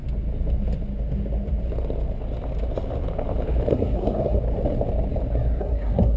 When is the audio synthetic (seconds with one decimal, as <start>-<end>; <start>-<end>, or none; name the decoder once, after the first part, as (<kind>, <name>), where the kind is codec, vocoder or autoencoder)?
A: 3.7-4.4 (codec, SNAC); 5.6-6.2